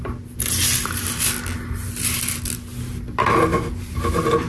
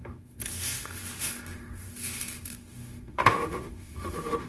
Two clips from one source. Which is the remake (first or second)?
second